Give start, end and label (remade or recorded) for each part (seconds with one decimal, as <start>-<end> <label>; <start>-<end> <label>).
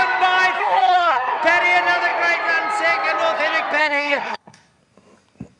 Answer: 0.0-0.6 recorded; 0.6-1.4 remade; 1.4-3.8 recorded; 3.8-4.8 remade; 4.8-5.6 recorded